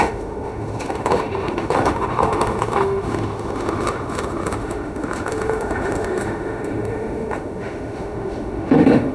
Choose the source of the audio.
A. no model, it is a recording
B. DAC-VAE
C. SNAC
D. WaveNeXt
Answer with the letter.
B